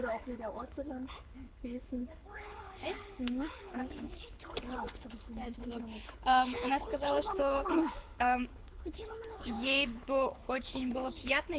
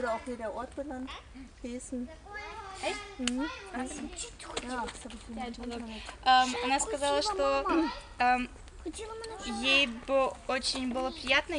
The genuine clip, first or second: second